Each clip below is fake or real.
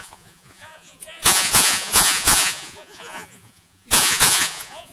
fake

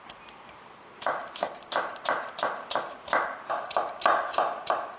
real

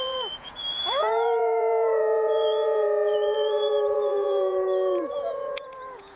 fake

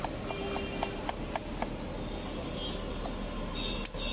real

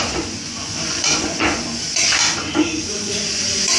fake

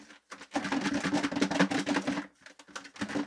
real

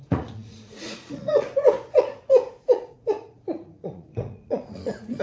fake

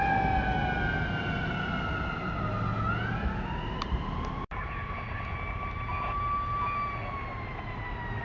real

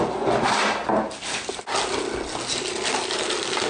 real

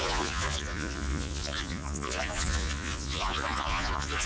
fake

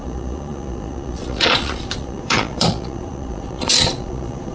fake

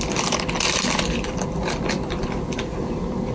real